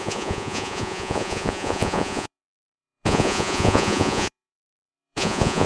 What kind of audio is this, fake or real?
fake